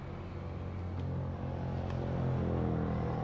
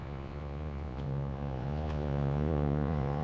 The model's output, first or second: second